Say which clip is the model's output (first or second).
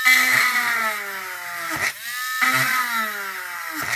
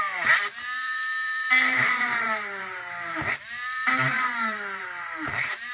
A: second